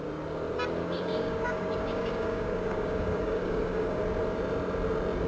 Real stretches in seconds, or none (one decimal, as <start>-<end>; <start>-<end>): 0.0-0.8; 4.0-5.3